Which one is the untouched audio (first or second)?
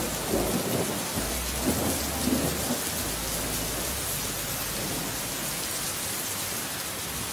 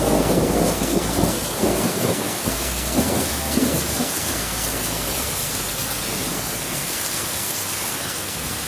first